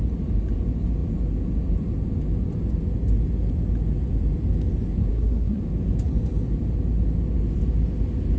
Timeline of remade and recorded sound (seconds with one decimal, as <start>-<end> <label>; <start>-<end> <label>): 0.0-5.1 recorded; 5.1-5.6 remade; 5.6-8.4 recorded